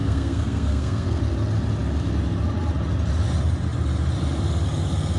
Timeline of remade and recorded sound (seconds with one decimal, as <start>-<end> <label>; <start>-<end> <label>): 0.0-1.2 remade; 1.2-5.2 recorded